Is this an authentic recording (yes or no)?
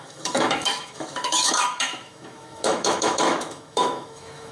no